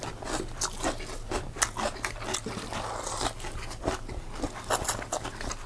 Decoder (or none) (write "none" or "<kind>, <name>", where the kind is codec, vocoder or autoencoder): none